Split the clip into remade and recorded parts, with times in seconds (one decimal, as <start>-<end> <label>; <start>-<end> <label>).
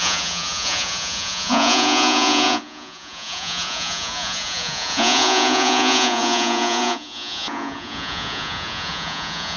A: 0.0-9.6 remade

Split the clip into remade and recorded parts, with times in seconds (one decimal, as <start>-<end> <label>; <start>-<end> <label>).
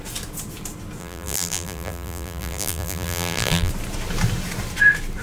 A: 0.0-1.0 recorded; 1.0-3.7 remade; 3.7-5.2 recorded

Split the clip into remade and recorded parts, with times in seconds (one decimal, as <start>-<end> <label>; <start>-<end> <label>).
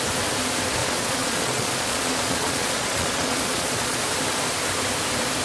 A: 0.0-0.8 recorded; 0.8-4.0 remade; 4.0-5.4 recorded